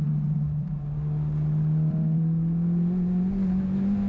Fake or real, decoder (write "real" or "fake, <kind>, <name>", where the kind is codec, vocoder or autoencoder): real